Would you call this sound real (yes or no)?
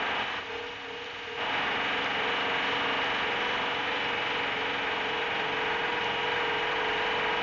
yes